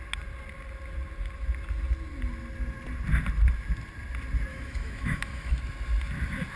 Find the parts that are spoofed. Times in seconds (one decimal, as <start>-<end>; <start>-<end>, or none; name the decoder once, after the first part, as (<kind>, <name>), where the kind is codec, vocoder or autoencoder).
4.5-5.6 (autoencoder, DAC-VAE)

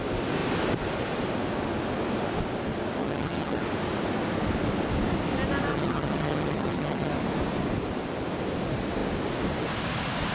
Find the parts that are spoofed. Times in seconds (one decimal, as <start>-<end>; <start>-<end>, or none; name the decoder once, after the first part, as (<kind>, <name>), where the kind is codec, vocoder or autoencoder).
3.0-3.6 (vocoder, HiFi-GAN); 5.7-7.1

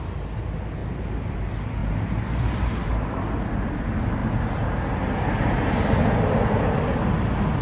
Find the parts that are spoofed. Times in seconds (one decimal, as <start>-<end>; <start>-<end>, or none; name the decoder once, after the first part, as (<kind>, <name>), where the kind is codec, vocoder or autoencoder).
0.8-1.4 (vocoder, BigVGAN v2); 1.8-3.2